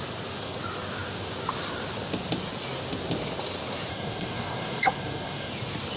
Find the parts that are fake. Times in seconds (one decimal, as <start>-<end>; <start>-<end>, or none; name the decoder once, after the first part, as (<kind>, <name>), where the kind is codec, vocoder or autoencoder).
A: 3.9-5.5 (codec, DAC)